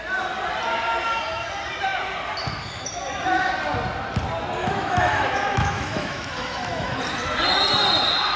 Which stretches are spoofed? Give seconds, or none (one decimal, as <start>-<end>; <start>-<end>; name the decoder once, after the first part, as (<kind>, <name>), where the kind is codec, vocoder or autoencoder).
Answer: 4.6-7.0 (autoencoder, DAC-VAE)

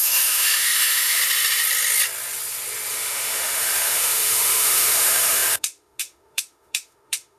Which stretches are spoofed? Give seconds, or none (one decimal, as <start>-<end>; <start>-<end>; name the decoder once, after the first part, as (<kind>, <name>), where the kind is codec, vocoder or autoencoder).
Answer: 0.0-1.2 (autoencoder, DAC-VAE); 2.9-7.4